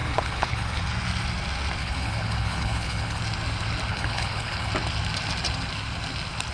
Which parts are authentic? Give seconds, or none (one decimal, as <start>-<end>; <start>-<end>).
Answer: 0.8-1.8; 3.2-3.9; 4.7-6.5